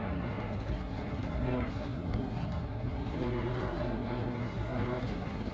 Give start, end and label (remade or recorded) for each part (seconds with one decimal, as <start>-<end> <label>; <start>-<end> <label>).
0.0-5.5 remade